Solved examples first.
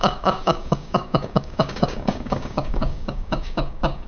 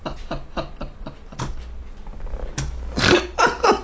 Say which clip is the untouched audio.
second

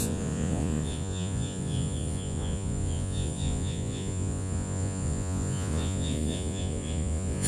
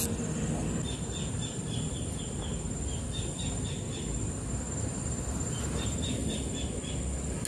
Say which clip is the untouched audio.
second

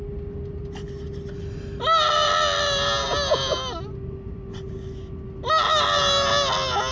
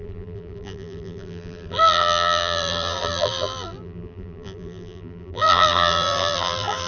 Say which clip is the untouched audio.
first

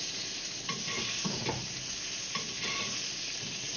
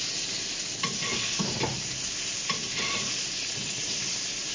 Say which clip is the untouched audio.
first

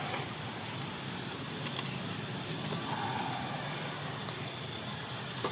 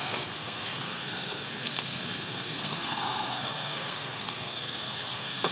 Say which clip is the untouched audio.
first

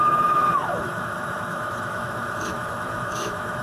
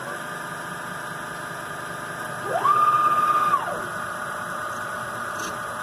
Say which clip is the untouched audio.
second